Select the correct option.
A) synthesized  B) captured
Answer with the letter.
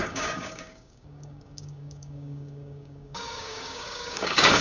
A